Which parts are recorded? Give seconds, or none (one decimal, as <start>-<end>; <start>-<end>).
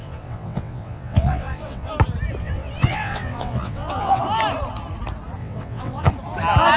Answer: 1.9-2.4; 4.2-5.4; 6.1-6.8